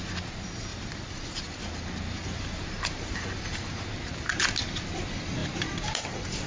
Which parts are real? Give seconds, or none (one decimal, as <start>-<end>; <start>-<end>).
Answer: 0.0-0.7; 1.6-2.2; 4.4-5.4